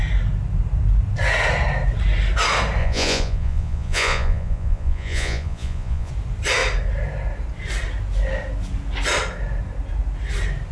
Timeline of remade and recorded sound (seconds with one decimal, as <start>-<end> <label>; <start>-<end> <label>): 0.0-2.8 recorded; 2.8-6.1 remade; 6.1-10.7 recorded